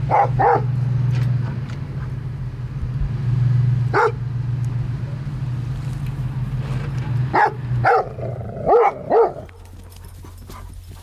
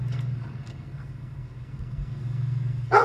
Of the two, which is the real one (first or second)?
first